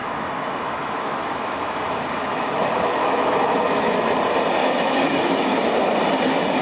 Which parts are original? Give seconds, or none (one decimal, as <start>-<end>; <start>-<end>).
4.0-4.6; 5.6-6.6